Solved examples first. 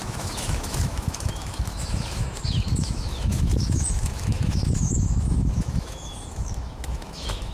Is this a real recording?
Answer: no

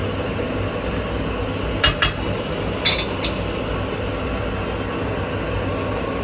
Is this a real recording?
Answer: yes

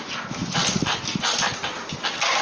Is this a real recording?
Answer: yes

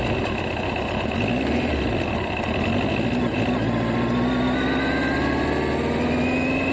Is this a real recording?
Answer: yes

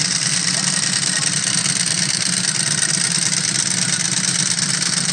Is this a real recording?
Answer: yes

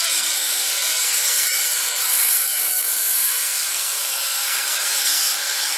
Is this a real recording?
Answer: no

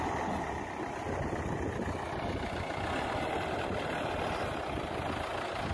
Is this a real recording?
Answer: yes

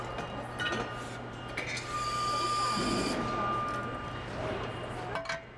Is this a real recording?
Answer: yes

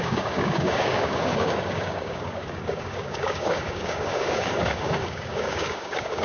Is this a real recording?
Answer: no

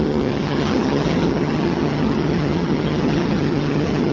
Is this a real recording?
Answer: no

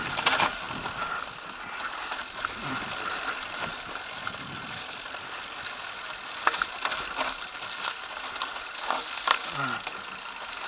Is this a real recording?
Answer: yes